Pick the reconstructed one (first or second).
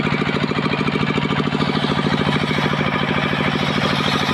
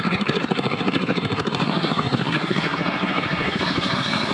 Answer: second